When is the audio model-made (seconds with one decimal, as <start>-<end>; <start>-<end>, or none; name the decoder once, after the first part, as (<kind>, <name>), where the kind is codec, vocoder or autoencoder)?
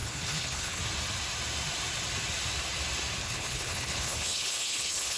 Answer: 0.0-0.8 (codec, HILCodec); 3.2-5.2